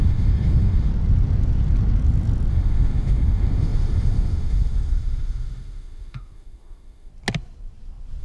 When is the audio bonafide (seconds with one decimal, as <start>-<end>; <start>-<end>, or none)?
0.9-2.5; 7.1-8.2